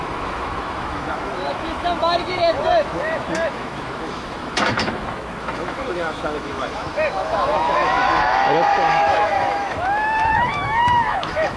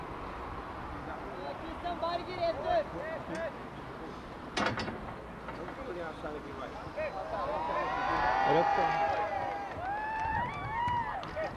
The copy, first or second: first